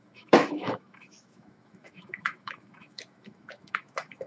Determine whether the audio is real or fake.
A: fake